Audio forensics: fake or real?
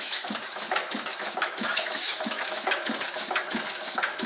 fake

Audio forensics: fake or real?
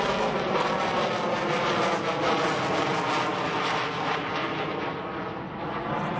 real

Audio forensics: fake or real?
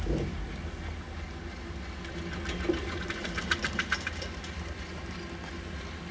real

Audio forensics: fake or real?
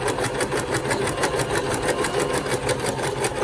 real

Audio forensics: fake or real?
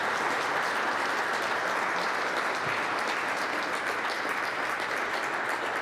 real